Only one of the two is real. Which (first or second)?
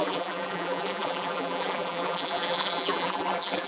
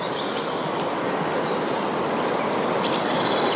second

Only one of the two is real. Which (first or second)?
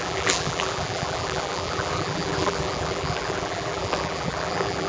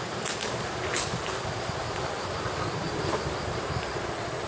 second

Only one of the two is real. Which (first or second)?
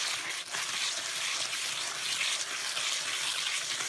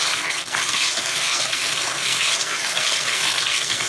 first